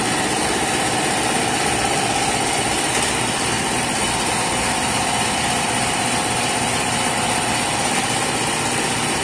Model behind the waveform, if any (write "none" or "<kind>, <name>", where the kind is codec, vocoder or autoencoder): none